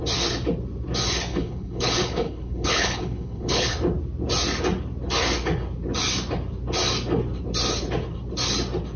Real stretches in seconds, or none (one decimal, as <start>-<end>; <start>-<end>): 0.0-1.3; 3.7-9.0